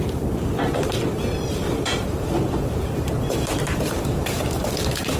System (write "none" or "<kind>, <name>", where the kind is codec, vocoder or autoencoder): vocoder, BigVGAN v2